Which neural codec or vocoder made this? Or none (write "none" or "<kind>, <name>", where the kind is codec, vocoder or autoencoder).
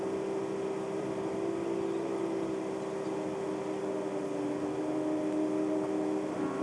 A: none